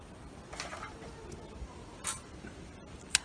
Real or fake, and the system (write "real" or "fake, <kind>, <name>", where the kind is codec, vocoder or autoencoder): real